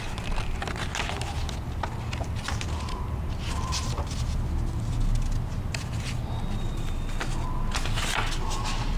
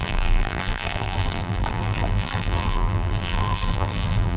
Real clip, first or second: first